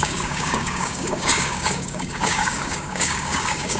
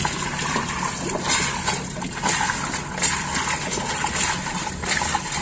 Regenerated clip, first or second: first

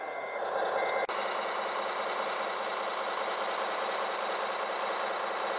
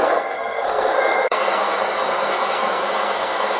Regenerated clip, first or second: second